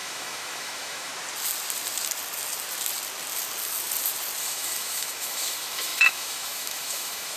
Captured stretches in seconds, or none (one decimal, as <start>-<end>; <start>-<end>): 1.1-4.4